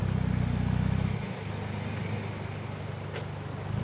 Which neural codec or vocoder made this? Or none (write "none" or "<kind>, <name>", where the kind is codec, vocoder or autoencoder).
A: none